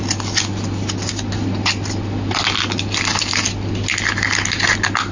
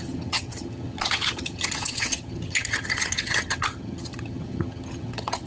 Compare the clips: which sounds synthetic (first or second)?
second